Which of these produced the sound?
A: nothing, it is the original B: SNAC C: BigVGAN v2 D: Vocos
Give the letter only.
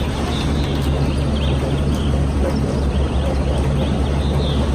A